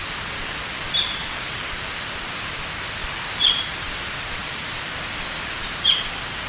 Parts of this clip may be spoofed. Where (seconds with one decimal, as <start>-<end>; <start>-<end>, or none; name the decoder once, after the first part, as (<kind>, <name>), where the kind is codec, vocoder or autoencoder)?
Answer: 1.2-2.3 (vocoder, BigVGAN v2); 3.0-3.6; 4.4-4.9